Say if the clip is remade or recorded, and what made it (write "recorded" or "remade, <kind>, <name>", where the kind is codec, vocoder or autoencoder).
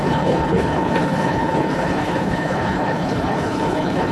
remade, codec, HILCodec